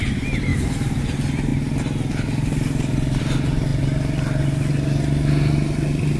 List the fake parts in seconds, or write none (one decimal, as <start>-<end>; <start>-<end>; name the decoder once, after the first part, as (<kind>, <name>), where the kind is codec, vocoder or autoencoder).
0.5-1.0 (vocoder, BigVGAN v2)